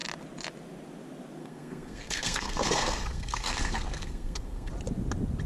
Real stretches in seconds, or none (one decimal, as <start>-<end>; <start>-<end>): 0.0-1.4; 4.7-5.5